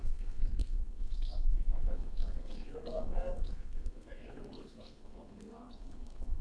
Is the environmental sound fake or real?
fake